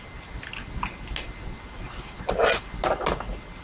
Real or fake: real